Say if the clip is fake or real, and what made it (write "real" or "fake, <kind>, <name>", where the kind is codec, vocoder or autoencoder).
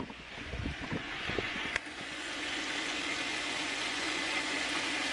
fake, vocoder, Vocos